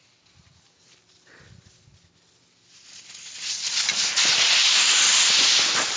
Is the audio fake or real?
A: real